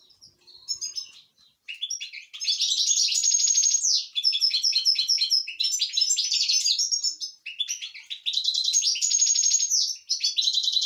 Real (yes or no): yes